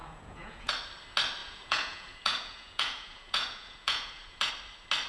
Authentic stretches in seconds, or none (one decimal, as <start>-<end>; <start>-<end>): 0.7-1.4; 4.5-5.1